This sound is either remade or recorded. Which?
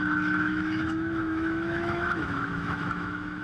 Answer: remade